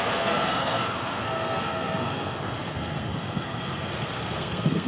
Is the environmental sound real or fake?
fake